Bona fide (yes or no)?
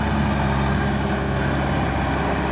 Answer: yes